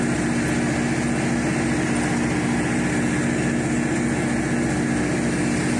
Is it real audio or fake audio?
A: real